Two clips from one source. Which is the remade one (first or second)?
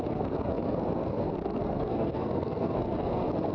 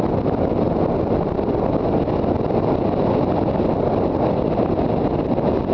first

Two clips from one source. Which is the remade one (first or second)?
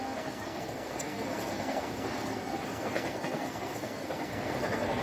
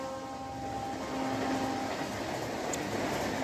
first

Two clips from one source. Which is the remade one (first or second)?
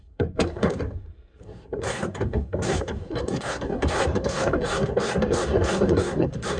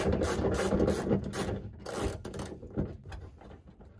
first